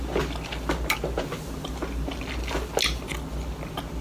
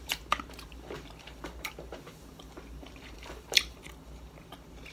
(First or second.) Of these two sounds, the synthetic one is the second